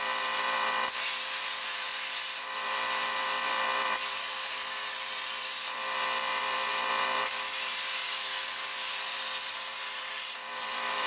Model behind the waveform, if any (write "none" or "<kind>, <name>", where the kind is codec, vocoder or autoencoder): vocoder, BigVGAN v2